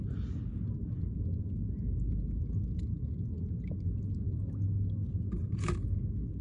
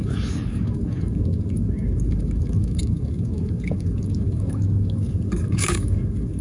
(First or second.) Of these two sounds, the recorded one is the first